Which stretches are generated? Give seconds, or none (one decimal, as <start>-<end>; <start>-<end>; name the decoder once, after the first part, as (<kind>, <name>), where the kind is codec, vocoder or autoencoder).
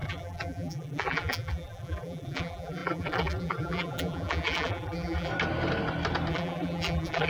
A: 0.0-5.3 (vocoder, BigVGAN v2); 6.3-7.3